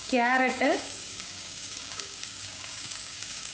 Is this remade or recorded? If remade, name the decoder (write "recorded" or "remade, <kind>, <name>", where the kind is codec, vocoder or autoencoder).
remade, codec, DAC